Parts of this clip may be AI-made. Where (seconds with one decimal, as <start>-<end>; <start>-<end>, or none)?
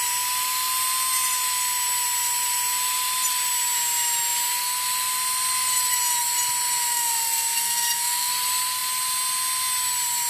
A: 6.9-8.3